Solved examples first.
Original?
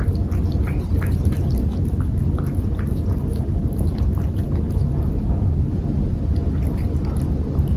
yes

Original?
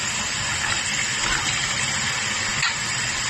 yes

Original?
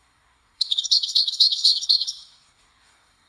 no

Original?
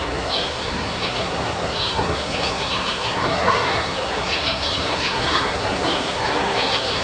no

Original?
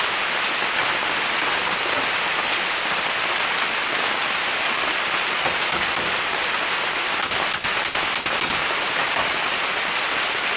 yes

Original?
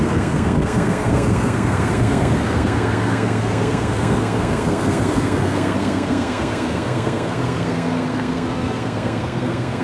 no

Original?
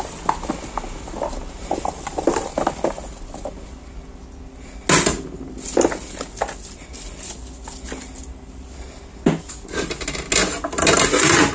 yes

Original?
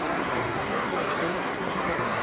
no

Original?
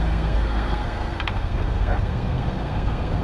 no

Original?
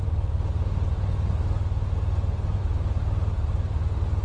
yes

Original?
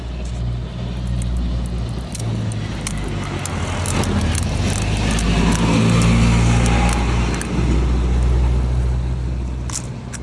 yes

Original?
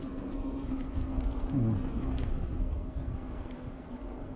no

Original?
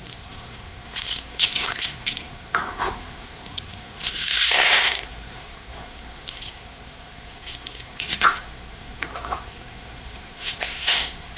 no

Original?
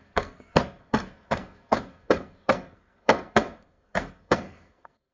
no